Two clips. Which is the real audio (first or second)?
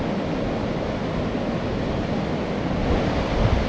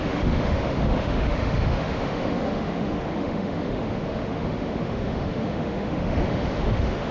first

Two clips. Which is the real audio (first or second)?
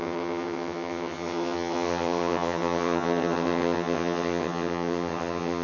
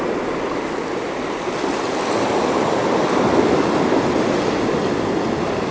second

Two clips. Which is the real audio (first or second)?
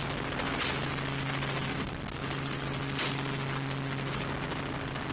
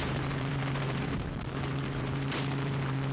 first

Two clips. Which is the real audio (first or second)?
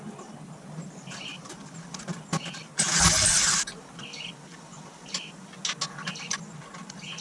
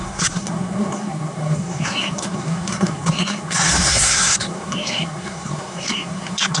first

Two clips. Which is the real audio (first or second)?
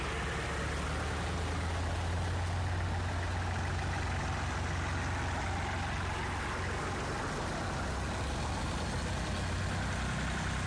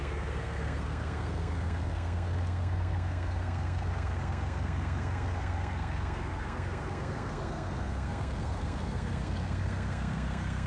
first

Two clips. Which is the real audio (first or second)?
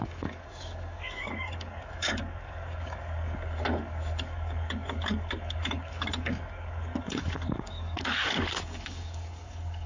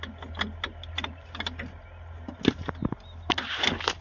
second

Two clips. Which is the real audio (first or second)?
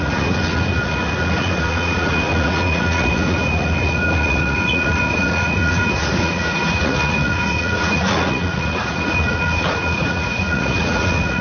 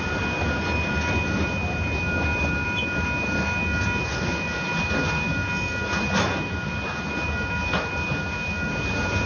second